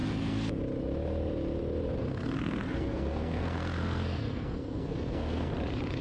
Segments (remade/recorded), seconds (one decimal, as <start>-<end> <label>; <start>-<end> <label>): 0.0-0.6 remade; 0.6-2.0 recorded; 2.0-5.5 remade; 5.5-6.0 recorded